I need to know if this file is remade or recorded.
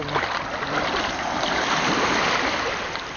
recorded